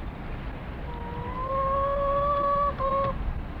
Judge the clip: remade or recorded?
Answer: recorded